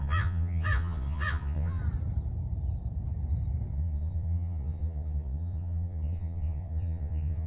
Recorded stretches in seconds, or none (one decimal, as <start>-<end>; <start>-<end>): 1.8-3.7